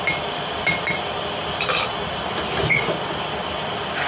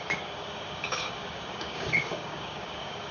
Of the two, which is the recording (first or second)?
first